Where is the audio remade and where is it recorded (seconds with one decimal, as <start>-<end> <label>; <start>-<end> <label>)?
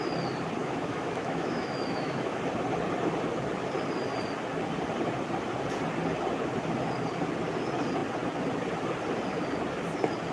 0.0-0.6 recorded; 0.6-2.4 remade; 2.4-10.3 recorded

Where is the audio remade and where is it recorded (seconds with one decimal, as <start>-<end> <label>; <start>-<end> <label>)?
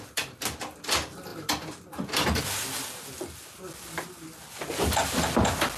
0.0-5.8 recorded